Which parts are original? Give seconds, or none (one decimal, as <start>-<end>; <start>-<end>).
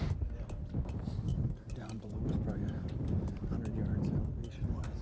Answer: 0.0-1.3; 3.5-5.0